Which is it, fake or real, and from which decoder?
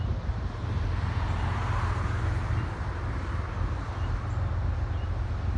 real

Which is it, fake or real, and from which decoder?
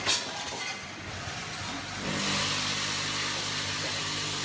real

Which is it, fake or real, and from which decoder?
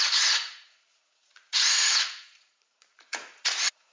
fake, vocoder, Vocos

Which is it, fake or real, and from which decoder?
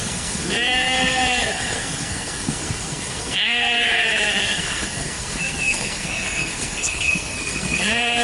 fake, codec, SNAC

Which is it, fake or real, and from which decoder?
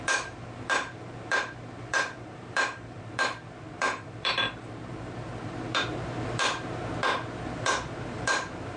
fake, vocoder, BigVGAN v2